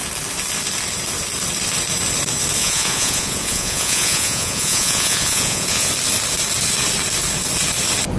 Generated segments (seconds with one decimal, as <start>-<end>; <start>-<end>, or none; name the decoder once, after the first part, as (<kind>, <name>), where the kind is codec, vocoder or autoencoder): 2.6-5.9 (vocoder, Vocos)